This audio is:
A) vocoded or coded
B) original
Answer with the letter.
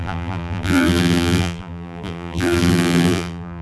A